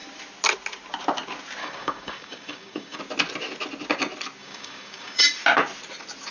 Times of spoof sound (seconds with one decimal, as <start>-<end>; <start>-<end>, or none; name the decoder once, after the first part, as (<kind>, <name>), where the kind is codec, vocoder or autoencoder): 1.6-3.0 (codec, DAC); 4.4-5.2